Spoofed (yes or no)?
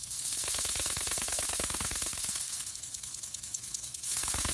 yes